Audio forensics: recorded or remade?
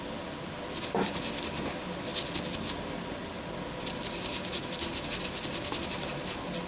recorded